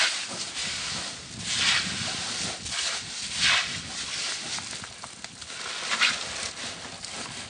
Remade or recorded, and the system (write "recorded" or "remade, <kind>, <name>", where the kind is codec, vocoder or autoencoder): recorded